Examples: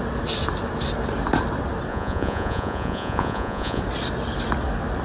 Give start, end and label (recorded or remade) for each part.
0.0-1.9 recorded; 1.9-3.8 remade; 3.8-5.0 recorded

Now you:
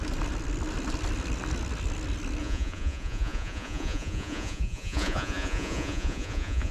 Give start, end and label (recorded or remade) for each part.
0.0-2.4 recorded; 2.4-6.7 remade

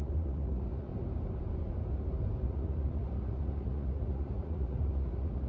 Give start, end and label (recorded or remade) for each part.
0.0-0.9 remade; 0.9-2.4 recorded; 2.4-5.5 remade

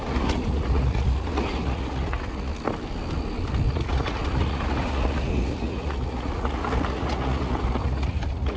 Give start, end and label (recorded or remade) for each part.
0.0-2.5 remade; 2.5-3.7 recorded; 3.7-8.6 remade

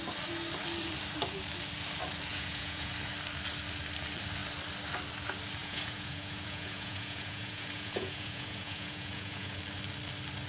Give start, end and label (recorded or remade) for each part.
0.0-2.3 recorded; 2.3-2.9 remade; 2.9-5.6 recorded; 5.6-9.6 remade; 9.6-10.5 recorded